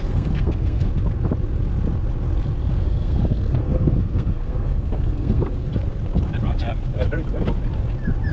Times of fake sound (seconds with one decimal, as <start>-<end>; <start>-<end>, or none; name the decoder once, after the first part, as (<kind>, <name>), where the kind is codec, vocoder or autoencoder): 0.0-0.9 (codec, SNAC); 2.7-5.7